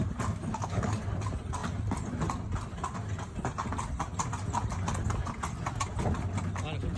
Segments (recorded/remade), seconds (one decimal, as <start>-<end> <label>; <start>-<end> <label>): 0.0-0.4 recorded; 0.4-1.0 remade; 1.0-7.0 recorded